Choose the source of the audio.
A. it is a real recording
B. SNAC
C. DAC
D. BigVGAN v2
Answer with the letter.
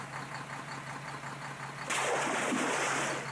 A